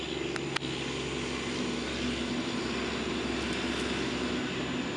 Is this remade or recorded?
recorded